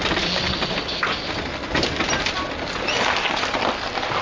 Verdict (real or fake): real